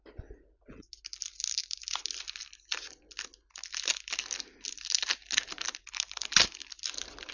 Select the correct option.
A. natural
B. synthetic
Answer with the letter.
A